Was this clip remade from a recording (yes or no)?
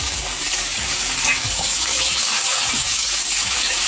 yes